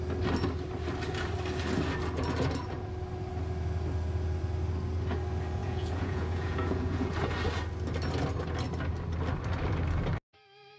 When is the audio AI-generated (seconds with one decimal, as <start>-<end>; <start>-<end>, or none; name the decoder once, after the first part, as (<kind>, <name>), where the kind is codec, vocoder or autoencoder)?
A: 5.6-7.1 (vocoder, Vocos)